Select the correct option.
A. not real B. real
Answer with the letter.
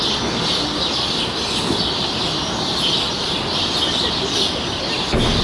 B